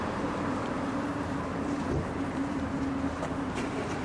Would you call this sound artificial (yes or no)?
yes